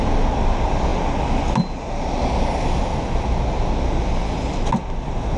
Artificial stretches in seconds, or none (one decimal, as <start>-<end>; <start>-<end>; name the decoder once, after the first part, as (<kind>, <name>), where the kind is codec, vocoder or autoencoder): none